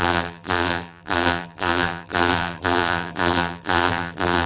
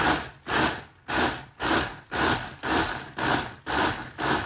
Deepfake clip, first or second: first